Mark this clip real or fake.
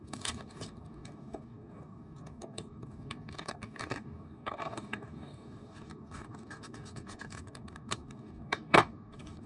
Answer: fake